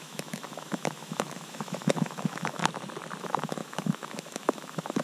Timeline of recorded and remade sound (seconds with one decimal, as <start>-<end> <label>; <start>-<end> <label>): 0.0-2.6 remade; 2.6-3.2 recorded; 3.2-5.0 remade

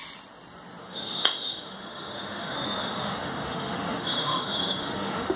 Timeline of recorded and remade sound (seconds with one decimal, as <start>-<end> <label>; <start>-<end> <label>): 0.0-0.8 recorded; 0.8-5.4 remade